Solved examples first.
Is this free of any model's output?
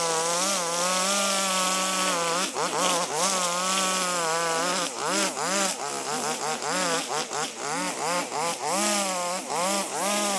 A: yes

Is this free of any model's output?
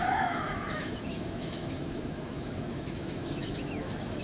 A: no